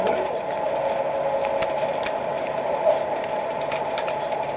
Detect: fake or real real